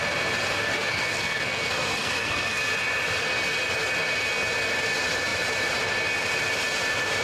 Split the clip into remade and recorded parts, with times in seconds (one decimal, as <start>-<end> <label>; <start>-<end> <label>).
0.0-0.6 recorded; 0.6-2.6 remade; 2.6-7.2 recorded